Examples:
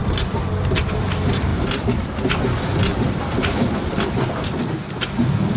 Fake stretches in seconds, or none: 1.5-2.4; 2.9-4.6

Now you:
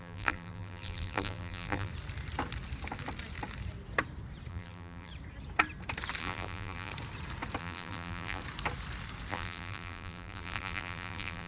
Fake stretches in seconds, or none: 0.0-1.9; 4.5-5.1; 6.2-6.9; 7.6-8.4; 9.3-11.5

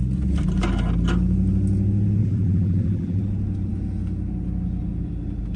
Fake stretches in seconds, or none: 2.2-3.2

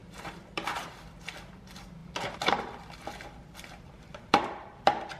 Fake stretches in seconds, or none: 0.0-0.9

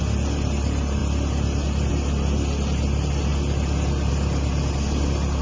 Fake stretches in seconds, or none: none

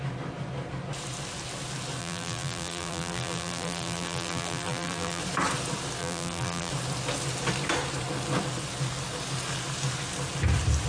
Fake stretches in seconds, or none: 2.0-5.2; 6.0-6.7